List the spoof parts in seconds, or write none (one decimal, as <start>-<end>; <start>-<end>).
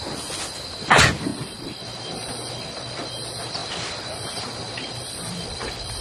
3.6-6.0